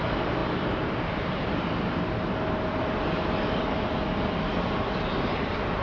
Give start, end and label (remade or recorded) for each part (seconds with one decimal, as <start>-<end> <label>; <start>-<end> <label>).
0.0-0.4 recorded; 0.4-1.9 remade; 1.9-5.8 recorded